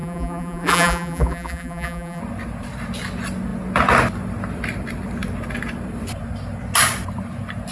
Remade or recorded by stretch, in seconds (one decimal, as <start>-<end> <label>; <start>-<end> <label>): 0.0-2.2 remade; 2.2-7.7 recorded